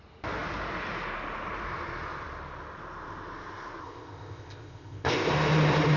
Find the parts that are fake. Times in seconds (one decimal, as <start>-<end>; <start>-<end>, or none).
3.8-5.3